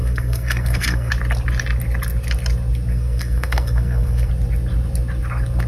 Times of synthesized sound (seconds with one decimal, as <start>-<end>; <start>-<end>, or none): 0.0-1.1; 2.9-4.3